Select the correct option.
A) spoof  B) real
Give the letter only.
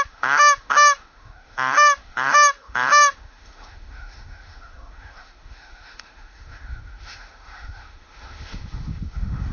A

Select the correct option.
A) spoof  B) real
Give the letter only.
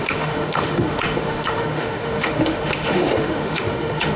A